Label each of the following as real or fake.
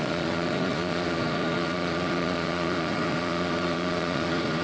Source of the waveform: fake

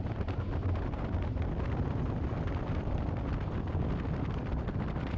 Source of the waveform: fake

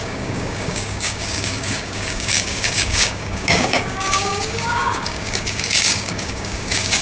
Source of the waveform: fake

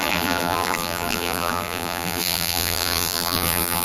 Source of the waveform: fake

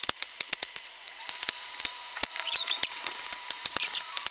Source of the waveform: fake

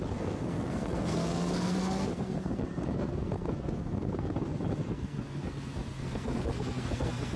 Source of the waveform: fake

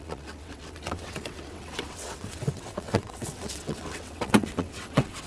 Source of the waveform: fake